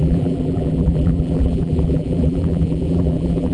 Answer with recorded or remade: remade